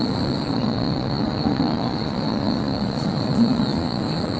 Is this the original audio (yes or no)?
no